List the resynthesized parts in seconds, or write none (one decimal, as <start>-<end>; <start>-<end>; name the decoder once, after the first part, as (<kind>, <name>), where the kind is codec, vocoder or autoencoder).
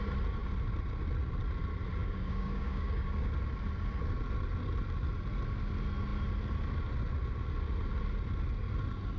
2.0-3.3 (codec, DAC)